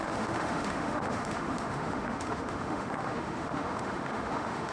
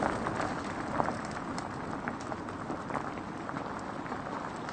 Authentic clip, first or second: second